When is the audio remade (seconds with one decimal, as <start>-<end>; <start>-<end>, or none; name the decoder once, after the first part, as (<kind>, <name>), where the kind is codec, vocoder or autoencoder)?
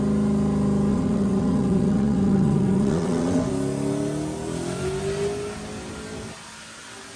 0.9-3.5 (vocoder, WaveNeXt)